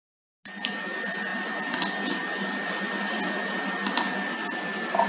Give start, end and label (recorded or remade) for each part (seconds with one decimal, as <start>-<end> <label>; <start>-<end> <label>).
0.0-5.1 recorded